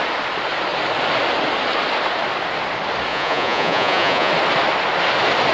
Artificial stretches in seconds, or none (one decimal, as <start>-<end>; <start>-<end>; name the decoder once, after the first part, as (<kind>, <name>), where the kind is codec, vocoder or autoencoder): 3.1-4.3 (vocoder, Vocos)